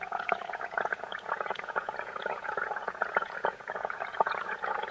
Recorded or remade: remade